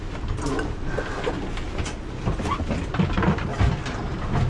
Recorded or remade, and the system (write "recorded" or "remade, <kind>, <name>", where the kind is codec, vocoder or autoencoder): recorded